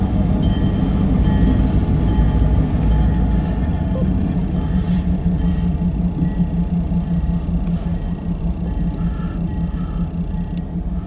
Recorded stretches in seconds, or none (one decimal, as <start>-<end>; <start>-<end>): 0.0-11.1